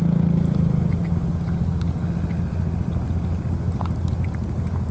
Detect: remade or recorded recorded